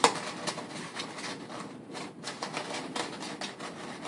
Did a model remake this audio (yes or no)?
no